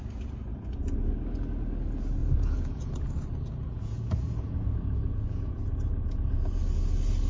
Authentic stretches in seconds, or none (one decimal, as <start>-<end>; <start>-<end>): 0.0-2.2; 6.6-7.3